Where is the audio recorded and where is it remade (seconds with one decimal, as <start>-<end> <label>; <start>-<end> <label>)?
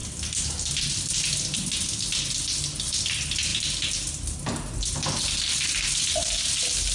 0.0-6.9 recorded